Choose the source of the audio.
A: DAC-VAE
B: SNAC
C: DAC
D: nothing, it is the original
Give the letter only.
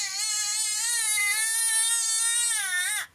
D